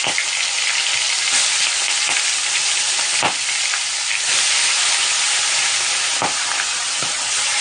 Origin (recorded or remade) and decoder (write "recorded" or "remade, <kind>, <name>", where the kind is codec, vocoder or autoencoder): recorded